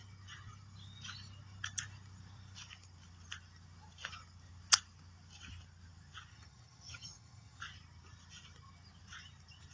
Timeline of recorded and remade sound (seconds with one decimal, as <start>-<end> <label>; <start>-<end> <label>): 0.0-6.3 recorded; 6.3-7.6 remade; 7.6-9.7 recorded